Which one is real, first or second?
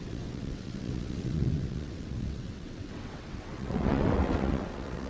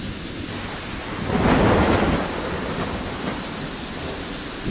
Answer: second